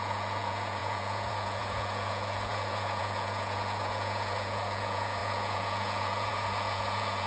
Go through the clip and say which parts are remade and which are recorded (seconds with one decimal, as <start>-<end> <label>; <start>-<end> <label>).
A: 0.0-7.3 remade